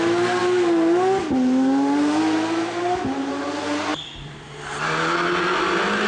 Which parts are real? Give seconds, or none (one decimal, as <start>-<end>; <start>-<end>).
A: 0.0-6.1